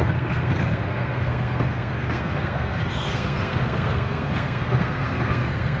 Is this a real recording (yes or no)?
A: no